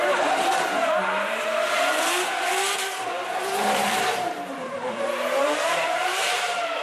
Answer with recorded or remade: remade